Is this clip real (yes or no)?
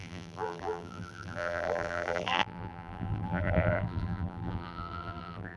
no